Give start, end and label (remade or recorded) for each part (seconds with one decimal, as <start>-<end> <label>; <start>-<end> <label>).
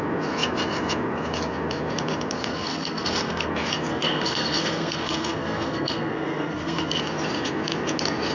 0.0-2.5 recorded; 2.5-3.5 remade; 3.5-3.9 recorded; 3.9-7.0 remade; 7.0-8.3 recorded